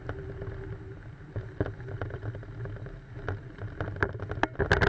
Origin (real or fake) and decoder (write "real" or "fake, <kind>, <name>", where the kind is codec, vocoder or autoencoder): real